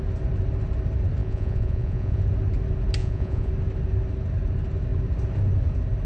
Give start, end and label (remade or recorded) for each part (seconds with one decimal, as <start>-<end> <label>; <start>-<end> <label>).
0.0-1.2 recorded; 1.2-2.2 remade; 2.2-3.0 recorded; 3.0-3.5 remade; 3.5-6.1 recorded